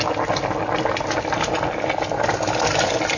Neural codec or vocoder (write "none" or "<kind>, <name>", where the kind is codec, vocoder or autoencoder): none